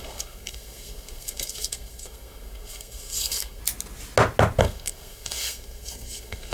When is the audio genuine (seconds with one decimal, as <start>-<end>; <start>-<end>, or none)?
3.6-4.6